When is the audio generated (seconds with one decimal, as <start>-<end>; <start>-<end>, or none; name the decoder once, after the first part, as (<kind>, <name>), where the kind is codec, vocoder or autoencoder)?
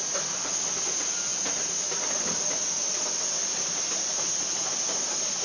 none